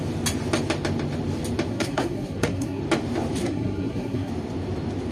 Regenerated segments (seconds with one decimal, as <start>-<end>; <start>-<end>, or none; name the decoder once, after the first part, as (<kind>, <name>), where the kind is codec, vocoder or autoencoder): 1.7-2.8 (codec, SNAC); 3.4-4.3